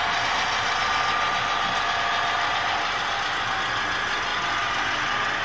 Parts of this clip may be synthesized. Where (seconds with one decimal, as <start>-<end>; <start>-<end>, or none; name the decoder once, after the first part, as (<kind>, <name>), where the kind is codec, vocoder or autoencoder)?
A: none